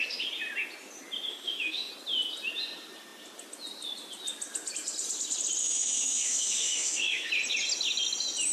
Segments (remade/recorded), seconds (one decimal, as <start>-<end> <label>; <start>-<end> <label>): 0.0-1.3 recorded; 1.3-1.9 remade; 1.9-5.6 recorded; 5.6-7.3 remade; 7.3-8.5 recorded

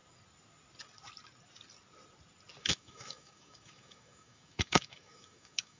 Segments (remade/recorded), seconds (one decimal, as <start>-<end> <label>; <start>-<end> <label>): 0.0-2.6 recorded; 2.6-5.8 remade

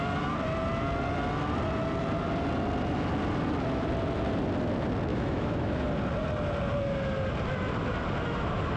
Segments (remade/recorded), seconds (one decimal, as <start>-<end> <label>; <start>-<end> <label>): 0.0-5.1 recorded; 5.1-5.9 remade; 5.9-8.8 recorded

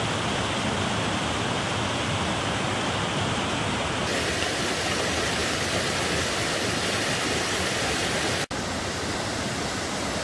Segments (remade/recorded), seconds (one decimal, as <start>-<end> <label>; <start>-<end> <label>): 0.0-10.2 recorded

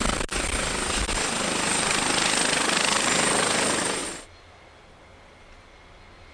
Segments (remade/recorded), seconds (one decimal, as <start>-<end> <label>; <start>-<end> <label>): 0.0-6.3 recorded

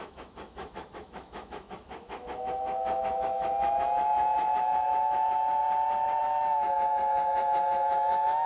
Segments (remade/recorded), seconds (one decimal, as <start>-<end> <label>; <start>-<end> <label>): 0.0-5.6 remade; 5.6-6.2 recorded; 6.2-8.5 remade